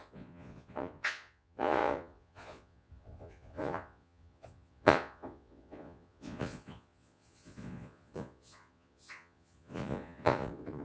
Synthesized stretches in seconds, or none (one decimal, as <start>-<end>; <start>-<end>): 0.0-10.8